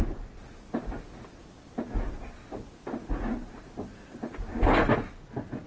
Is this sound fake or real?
real